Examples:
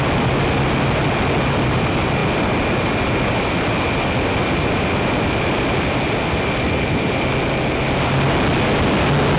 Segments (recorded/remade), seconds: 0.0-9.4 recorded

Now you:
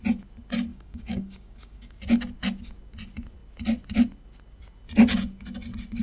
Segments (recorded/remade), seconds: 0.0-0.7 recorded; 0.7-2.0 remade; 2.0-6.0 recorded

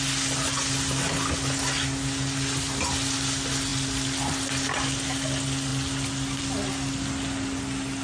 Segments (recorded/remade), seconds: 0.0-8.0 recorded

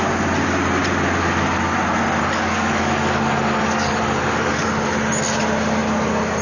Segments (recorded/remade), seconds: 0.0-2.2 recorded; 2.2-4.9 remade; 4.9-6.4 recorded

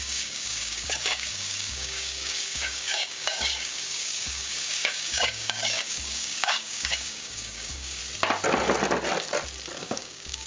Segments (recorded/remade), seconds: 0.0-8.0 remade; 8.0-9.8 recorded; 9.8-10.5 remade

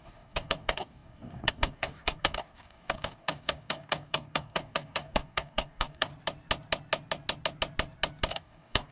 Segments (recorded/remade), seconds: 0.0-6.1 remade; 6.1-8.3 recorded; 8.3-8.9 remade